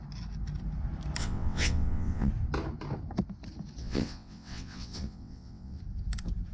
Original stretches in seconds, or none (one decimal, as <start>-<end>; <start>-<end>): 0.0-1.2; 2.3-3.8; 5.8-6.5

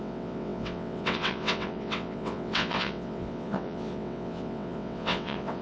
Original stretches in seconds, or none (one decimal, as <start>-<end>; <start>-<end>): none